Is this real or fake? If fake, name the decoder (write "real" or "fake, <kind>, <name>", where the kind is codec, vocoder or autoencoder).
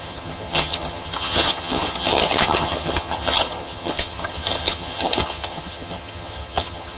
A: fake, vocoder, HiFi-GAN